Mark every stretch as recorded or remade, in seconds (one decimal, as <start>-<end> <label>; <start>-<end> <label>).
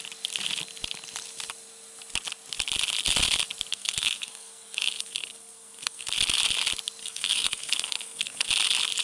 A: 0.0-3.7 recorded; 3.7-6.1 remade; 6.1-7.0 recorded; 7.0-8.5 remade; 8.5-9.0 recorded